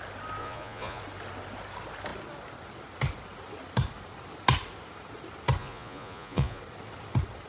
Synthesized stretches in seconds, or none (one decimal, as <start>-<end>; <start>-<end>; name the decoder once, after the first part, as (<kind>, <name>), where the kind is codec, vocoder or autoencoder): 0.4-1.0 (vocoder, Vocos); 5.6-6.6